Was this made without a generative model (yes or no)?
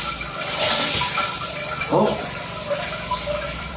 no